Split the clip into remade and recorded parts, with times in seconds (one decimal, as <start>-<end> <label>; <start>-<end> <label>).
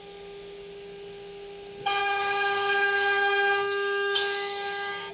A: 0.0-2.0 recorded; 2.0-5.1 remade